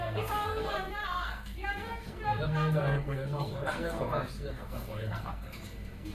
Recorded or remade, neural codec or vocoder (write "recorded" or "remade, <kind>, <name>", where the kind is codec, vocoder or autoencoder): remade, codec, SNAC